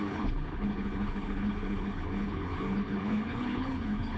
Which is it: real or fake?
fake